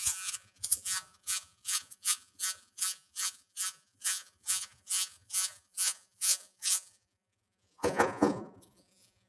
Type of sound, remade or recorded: remade